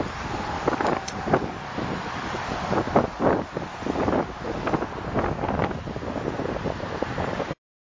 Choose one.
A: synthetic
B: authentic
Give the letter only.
B